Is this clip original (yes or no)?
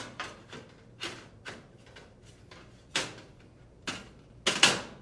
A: yes